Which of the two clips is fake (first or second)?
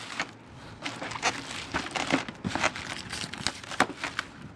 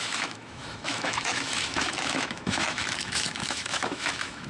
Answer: second